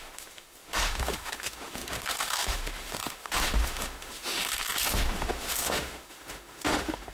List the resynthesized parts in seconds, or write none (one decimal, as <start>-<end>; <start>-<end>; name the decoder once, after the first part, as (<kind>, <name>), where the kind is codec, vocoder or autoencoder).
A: 0.0-7.1 (autoencoder, DAC-VAE)